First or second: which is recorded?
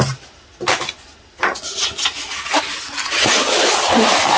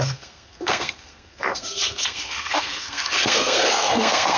first